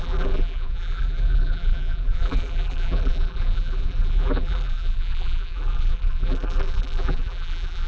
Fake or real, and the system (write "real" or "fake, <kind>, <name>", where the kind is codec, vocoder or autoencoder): fake, vocoder, BigVGAN v2